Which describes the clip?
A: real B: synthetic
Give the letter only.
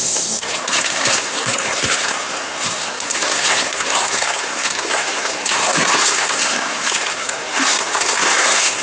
B